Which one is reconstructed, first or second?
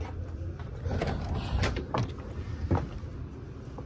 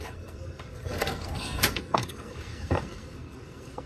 second